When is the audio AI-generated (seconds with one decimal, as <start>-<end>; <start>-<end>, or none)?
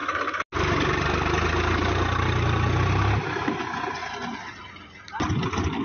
none